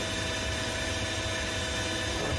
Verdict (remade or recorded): recorded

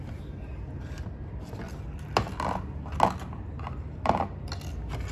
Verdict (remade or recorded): recorded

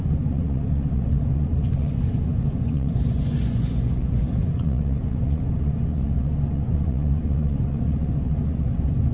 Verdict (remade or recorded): remade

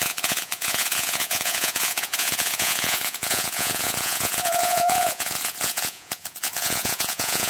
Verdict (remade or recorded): remade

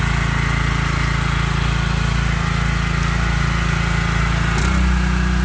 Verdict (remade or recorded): recorded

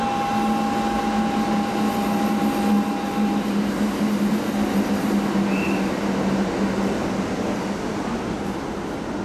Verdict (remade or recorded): recorded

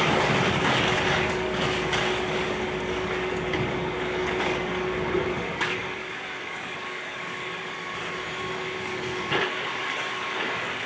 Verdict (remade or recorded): remade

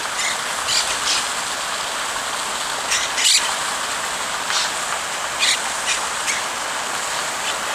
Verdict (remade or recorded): recorded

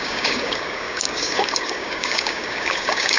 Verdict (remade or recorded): remade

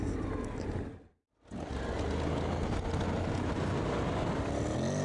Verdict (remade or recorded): recorded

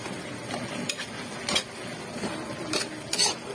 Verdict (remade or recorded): recorded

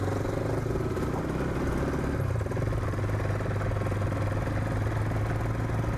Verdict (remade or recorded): recorded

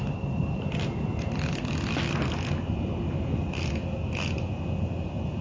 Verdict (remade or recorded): recorded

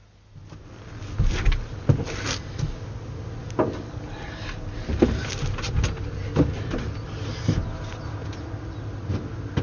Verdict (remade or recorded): recorded